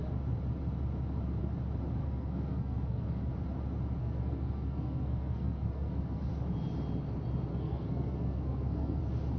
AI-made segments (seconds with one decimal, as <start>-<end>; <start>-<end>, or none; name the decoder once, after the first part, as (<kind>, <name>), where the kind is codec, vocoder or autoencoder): 2.0-3.3 (codec, SNAC); 4.0-6.3; 7.5-9.0